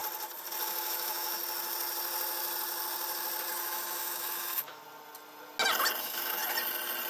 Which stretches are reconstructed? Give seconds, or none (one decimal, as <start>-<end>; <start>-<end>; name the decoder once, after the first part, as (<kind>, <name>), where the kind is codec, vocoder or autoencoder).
0.6-1.4 (autoencoder, DAC-VAE); 3.6-4.8; 6.0-6.4